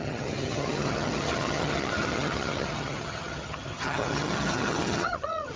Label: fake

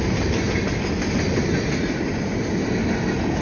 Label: real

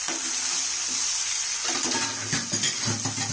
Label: real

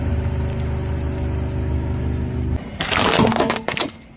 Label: real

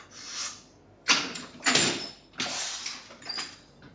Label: real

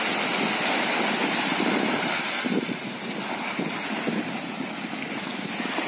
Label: real